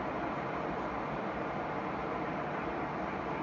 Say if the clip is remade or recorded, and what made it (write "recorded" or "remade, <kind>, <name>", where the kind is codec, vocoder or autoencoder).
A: recorded